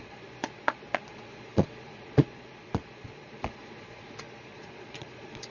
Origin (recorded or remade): remade